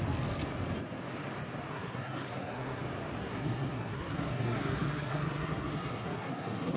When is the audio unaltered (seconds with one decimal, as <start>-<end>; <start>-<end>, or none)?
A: 0.0-1.7; 2.8-3.2